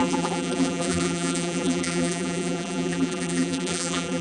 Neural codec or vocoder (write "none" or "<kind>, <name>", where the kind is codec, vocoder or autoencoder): vocoder, BigVGAN v2